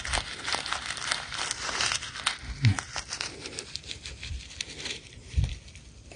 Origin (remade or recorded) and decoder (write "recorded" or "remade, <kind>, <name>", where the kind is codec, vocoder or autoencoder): recorded